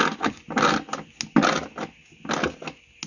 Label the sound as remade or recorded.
recorded